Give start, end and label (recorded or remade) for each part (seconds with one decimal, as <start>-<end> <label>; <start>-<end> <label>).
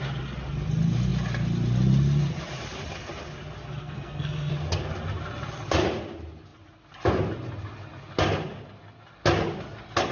0.0-3.8 recorded; 3.8-4.5 remade; 4.5-10.1 recorded